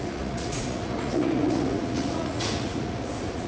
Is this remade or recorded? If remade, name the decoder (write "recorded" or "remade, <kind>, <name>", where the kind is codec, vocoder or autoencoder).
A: remade, vocoder, Vocos